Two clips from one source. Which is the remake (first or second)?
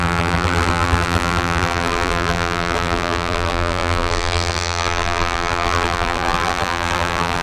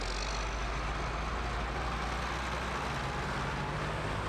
first